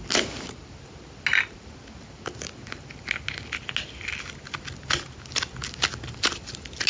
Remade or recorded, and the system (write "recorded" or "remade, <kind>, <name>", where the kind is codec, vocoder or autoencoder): recorded